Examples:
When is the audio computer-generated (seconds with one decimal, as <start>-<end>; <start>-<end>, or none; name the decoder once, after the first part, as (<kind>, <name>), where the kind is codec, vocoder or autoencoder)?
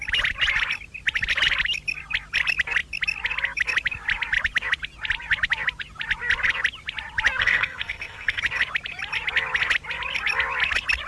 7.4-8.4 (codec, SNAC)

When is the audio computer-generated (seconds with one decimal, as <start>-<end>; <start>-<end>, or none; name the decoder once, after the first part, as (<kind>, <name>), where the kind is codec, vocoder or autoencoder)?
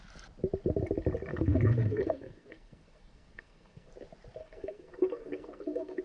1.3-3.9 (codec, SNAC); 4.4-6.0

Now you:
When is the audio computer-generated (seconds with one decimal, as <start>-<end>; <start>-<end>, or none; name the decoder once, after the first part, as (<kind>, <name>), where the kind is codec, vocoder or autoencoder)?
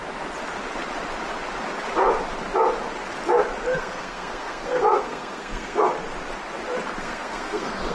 3.8-5.9 (codec, SNAC); 7.0-7.9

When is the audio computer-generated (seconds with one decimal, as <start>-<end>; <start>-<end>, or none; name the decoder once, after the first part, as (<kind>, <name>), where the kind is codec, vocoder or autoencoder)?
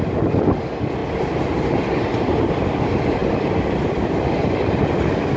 none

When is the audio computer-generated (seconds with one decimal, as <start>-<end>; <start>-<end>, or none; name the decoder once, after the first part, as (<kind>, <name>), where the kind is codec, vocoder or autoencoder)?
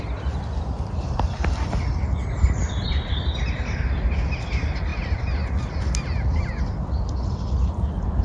none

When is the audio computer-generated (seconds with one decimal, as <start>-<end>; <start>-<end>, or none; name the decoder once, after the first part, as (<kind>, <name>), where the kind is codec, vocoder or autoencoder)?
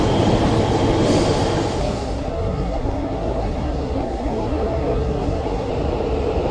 1.8-5.7 (codec, SNAC)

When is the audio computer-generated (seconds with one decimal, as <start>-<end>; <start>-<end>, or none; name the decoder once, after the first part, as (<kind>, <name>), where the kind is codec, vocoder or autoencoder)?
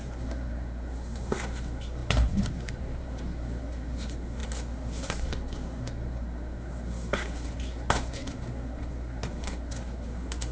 0.0-10.5 (codec, SNAC)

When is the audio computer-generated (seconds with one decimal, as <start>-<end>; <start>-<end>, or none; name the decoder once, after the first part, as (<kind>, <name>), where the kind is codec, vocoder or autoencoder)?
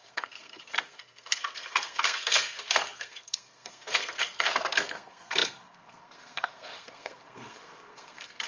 0.0-8.5 (codec, SNAC)